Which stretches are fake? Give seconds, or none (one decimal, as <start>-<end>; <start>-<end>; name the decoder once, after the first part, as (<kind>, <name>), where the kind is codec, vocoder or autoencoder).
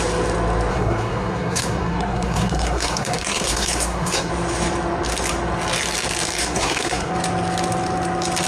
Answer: 0.7-4.3 (codec, SNAC); 6.4-7.1